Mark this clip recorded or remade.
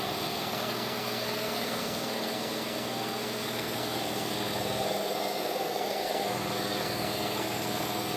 remade